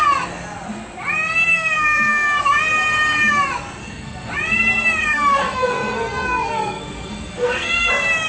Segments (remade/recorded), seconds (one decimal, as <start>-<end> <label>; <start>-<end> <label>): 0.0-1.5 recorded; 1.5-2.4 remade; 2.4-3.8 recorded; 3.8-4.3 remade; 4.3-5.0 recorded; 5.0-7.9 remade; 7.9-8.3 recorded

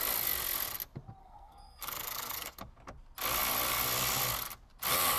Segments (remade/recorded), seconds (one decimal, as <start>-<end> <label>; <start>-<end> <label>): 0.0-1.2 recorded; 1.2-2.6 remade; 2.6-5.2 recorded

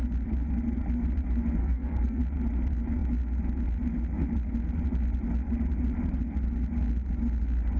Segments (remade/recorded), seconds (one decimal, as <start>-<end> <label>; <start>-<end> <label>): 0.0-1.6 recorded; 1.6-2.2 remade; 2.2-7.8 recorded

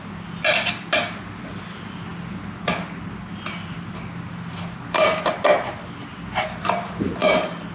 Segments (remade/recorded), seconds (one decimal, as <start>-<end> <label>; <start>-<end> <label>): 0.0-7.7 recorded

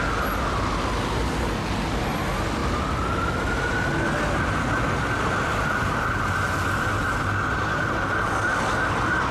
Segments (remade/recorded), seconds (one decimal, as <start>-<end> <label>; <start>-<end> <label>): 0.0-9.3 recorded

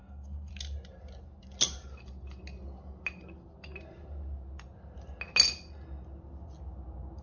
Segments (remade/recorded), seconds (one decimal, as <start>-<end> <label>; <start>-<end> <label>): 0.0-0.5 remade; 0.5-7.2 recorded